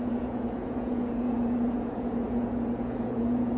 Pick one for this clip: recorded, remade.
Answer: remade